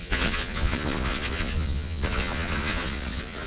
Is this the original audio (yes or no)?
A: no